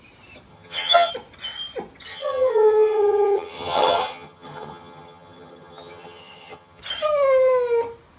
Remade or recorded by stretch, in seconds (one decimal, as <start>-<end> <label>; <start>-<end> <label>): 0.0-0.5 recorded; 0.5-1.1 remade; 1.1-2.1 recorded; 2.1-6.8 remade; 6.8-8.2 recorded